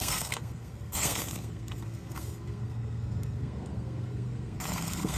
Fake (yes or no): yes